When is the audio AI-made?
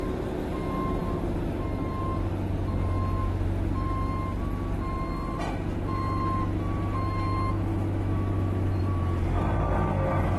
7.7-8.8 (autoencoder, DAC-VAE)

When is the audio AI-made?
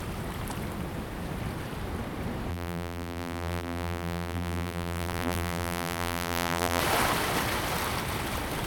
2.5-6.8 (vocoder, BigVGAN v2)